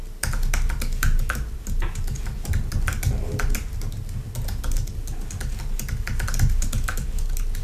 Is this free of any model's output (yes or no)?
yes